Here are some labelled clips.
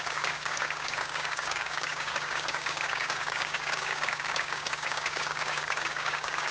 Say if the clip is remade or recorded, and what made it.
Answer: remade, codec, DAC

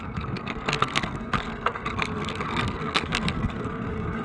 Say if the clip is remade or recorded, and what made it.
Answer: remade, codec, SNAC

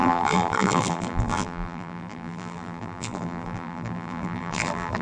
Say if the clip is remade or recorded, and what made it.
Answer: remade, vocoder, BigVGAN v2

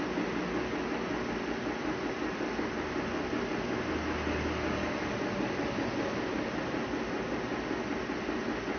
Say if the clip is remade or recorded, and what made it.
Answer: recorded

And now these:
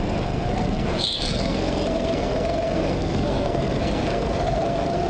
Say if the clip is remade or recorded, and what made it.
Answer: remade, codec, SNAC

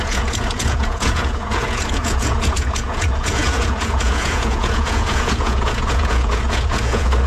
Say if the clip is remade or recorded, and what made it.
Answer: remade, vocoder, Vocos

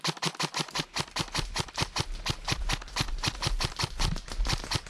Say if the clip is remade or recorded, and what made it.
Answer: recorded